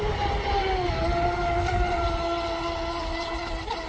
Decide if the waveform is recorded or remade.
recorded